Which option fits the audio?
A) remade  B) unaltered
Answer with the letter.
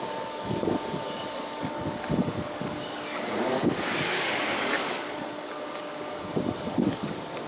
A